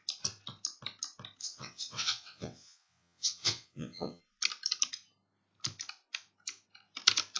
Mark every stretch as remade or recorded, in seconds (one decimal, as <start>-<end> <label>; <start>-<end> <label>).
0.0-1.4 recorded; 1.4-4.2 remade; 4.2-7.4 recorded